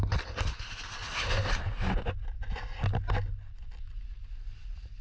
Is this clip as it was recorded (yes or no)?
yes